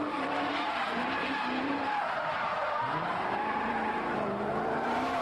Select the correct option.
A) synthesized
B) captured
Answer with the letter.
A